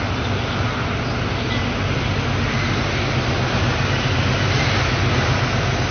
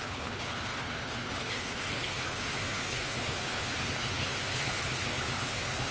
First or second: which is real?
first